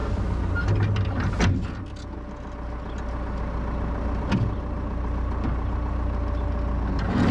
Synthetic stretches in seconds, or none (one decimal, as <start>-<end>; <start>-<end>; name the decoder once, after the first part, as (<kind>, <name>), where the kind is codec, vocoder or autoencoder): none